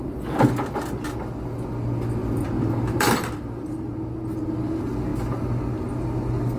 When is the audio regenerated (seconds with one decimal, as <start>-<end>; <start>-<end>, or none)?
2.2-3.9